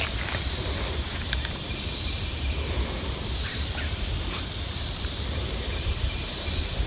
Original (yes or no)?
no